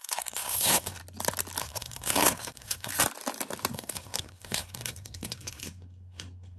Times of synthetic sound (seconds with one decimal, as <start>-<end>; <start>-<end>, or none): 0.0-1.0; 1.6-2.9; 3.7-6.6